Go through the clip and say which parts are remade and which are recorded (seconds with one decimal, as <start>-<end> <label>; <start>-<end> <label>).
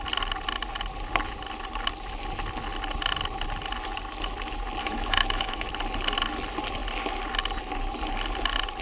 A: 0.0-4.8 recorded; 4.8-5.7 remade; 5.7-8.8 recorded